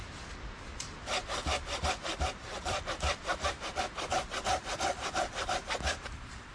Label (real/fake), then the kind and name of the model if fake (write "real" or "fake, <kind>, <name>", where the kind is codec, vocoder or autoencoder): fake, vocoder, BigVGAN v2